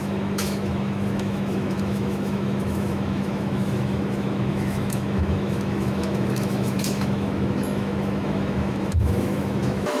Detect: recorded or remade remade